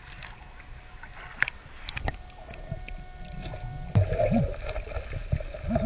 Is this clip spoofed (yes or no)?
no